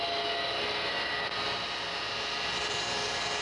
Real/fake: real